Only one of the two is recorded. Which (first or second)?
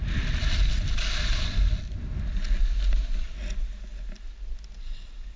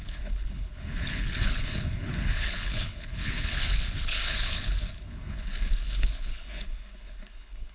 first